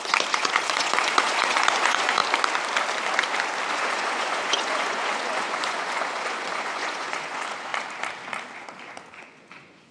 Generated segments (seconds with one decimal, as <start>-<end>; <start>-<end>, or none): 0.0-2.2; 3.7-7.7; 9.1-9.9